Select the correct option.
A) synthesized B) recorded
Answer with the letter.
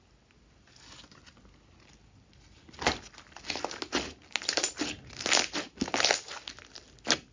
B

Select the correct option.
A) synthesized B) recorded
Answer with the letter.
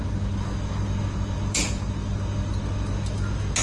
B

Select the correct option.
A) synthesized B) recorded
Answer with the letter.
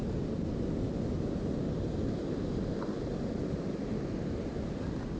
B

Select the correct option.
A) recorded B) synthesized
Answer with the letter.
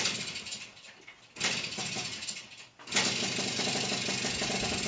A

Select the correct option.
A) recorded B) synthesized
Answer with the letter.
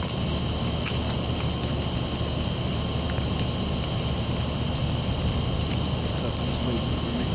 A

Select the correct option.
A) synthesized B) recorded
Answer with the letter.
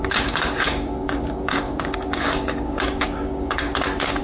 A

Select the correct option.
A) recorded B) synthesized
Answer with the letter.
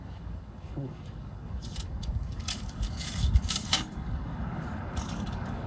B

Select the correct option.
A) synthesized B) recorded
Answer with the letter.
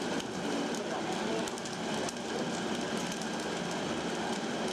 B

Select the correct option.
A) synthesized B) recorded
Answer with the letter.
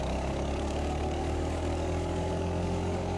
A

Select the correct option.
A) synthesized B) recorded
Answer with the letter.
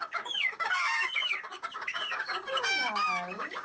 A